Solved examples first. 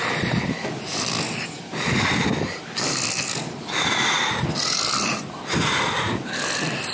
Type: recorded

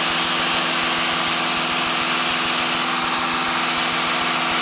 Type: recorded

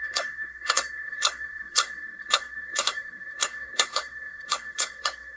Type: remade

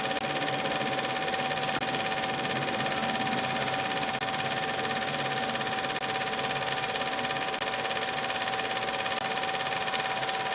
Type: recorded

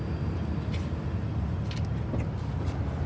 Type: recorded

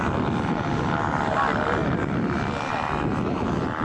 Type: recorded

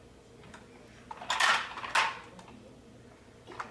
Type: recorded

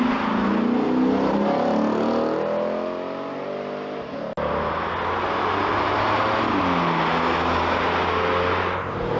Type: recorded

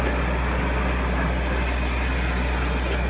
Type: recorded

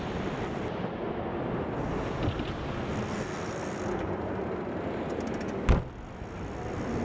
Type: recorded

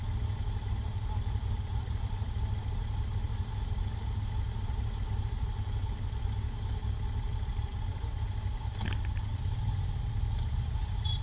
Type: recorded